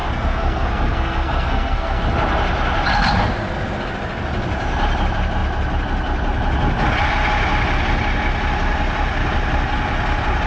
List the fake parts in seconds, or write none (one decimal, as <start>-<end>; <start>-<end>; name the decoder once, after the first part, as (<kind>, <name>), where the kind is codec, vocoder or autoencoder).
0.0-2.0 (codec, SNAC)